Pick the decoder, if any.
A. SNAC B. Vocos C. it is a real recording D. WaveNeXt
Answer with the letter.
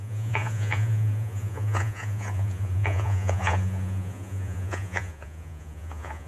B